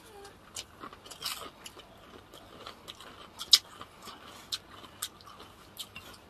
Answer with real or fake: real